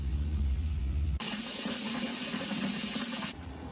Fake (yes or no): yes